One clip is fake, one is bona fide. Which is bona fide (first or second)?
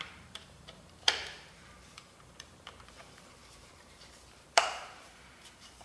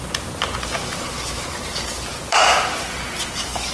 second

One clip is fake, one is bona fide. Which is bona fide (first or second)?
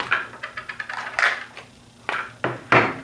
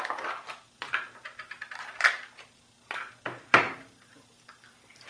first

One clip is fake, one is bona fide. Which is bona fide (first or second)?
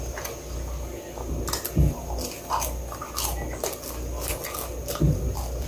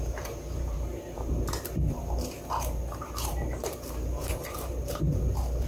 first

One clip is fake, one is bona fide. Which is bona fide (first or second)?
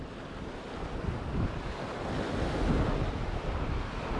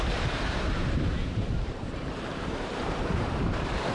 first